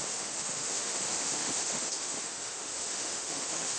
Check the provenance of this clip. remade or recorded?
remade